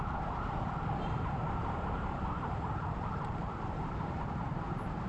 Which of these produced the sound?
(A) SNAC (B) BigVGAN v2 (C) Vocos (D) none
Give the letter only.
B